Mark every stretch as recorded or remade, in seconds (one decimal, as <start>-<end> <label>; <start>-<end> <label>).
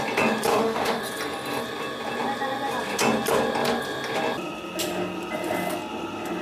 0.0-0.5 recorded; 0.5-1.0 remade; 1.0-6.4 recorded